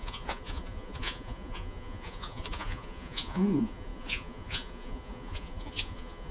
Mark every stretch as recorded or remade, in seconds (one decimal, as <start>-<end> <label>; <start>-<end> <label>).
0.0-6.3 remade